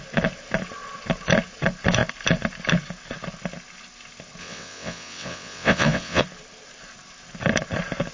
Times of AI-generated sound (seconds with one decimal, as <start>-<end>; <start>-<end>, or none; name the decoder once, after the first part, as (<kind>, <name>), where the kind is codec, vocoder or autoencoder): 4.4-6.2 (vocoder, WaveNeXt)